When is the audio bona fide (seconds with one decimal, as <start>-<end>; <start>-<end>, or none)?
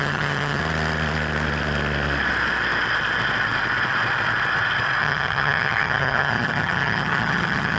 0.6-5.0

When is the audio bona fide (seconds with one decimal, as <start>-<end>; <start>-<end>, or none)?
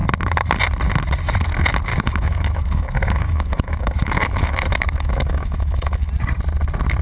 0.0-1.9; 6.1-7.0